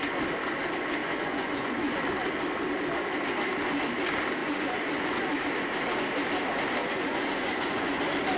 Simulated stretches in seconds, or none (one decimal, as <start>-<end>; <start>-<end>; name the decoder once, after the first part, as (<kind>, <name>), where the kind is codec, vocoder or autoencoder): 1.0-1.9 (vocoder, Vocos); 4.4-5.2; 6.8-8.0